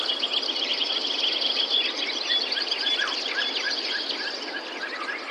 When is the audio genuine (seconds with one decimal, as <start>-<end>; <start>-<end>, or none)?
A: 0.0-2.8; 3.5-5.3